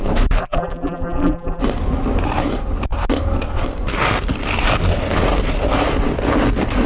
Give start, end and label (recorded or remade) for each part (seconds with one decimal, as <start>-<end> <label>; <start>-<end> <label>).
0.0-0.4 recorded; 0.4-1.6 remade; 1.6-6.9 recorded